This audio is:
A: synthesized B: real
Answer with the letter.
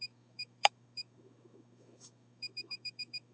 A